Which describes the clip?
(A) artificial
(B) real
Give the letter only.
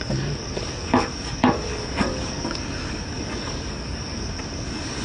A